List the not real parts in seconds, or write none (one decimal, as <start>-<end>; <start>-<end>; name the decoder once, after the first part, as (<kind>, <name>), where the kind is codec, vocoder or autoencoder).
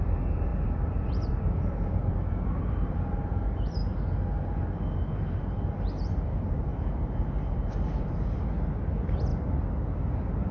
0.0-3.8 (vocoder, BigVGAN v2); 5.4-6.7; 7.5-9.3